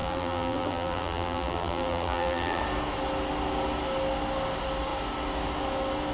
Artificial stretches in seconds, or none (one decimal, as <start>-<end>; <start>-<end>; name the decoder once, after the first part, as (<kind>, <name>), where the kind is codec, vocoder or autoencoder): 0.0-2.6 (vocoder, BigVGAN v2)